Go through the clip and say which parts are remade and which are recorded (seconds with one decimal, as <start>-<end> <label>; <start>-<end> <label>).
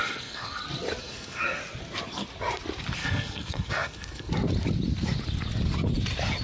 0.0-0.6 remade; 0.6-1.0 recorded; 1.0-1.6 remade; 1.6-3.0 recorded; 3.0-4.3 remade; 4.3-6.4 recorded